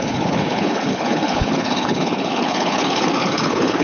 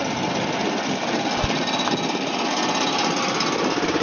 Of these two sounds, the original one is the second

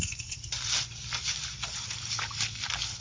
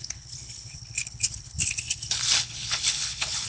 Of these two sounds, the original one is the first